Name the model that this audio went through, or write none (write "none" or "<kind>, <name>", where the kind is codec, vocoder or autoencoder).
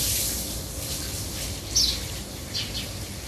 none